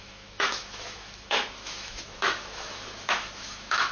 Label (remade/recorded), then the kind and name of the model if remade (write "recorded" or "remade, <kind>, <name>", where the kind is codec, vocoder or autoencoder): remade, autoencoder, DAC-VAE